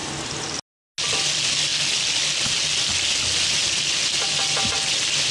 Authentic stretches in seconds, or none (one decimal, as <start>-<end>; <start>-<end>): 0.0-5.3